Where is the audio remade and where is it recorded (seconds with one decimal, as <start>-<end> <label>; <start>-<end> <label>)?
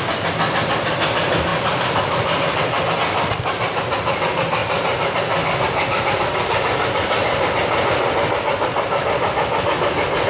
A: 0.0-1.5 recorded; 1.5-2.9 remade; 2.9-4.6 recorded; 4.6-6.2 remade; 6.2-10.3 recorded